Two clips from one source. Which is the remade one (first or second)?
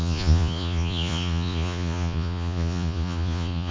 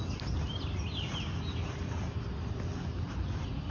first